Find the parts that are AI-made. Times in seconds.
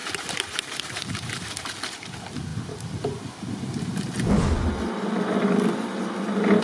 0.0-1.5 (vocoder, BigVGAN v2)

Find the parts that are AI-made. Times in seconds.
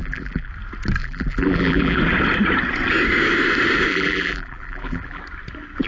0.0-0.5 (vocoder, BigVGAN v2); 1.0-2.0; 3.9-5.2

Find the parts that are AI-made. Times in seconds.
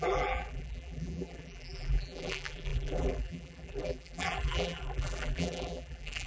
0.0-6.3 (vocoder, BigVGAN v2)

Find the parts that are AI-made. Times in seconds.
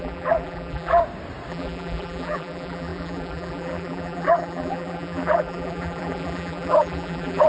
0.0-1.0 (vocoder, BigVGAN v2); 1.5-7.5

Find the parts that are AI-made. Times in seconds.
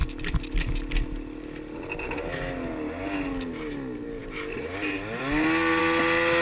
none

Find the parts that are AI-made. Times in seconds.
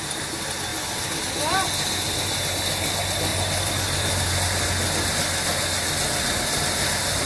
0.7-1.2 (vocoder, BigVGAN v2); 3.3-4.3